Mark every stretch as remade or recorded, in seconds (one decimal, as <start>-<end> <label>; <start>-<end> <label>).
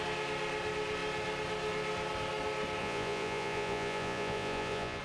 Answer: 0.0-2.8 recorded; 2.8-5.0 remade